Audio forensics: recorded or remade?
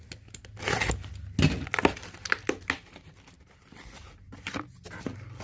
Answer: recorded